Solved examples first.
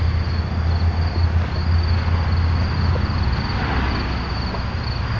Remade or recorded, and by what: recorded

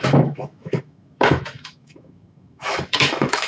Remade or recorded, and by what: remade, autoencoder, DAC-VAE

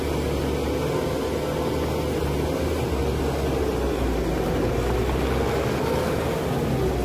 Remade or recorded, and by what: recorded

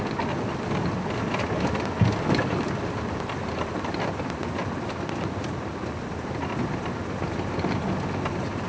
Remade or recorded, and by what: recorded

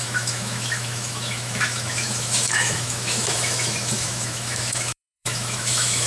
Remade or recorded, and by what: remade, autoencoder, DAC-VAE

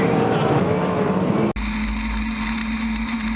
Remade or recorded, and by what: recorded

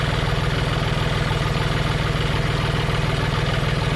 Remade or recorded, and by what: recorded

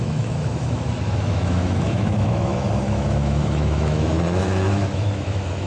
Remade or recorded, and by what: remade, autoencoder, DAC-VAE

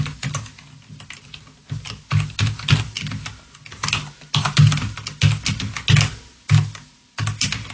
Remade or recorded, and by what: recorded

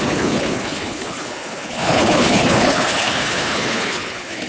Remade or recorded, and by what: remade, codec, HILCodec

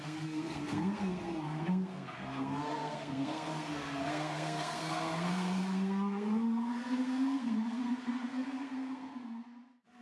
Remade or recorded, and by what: remade, codec, SNAC